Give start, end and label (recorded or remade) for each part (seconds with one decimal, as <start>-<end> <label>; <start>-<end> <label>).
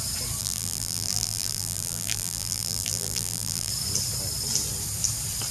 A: 0.0-0.4 recorded; 0.4-3.7 remade; 3.7-5.5 recorded